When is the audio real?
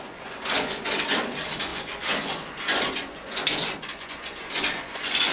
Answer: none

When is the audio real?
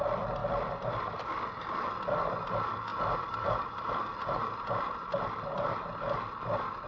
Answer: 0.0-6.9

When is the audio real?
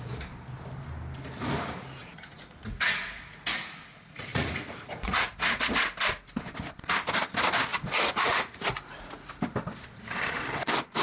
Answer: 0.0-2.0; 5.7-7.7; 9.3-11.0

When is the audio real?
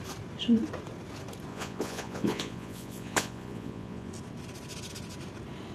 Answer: 0.0-1.5; 4.1-5.7